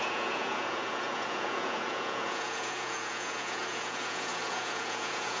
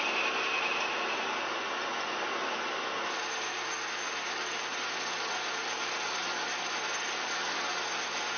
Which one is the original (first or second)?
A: second